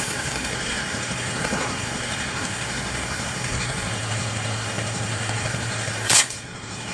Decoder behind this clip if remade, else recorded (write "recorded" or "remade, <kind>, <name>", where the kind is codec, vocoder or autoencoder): remade, codec, SNAC